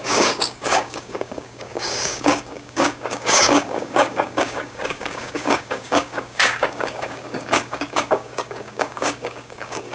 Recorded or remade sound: remade